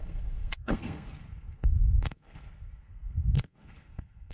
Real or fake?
fake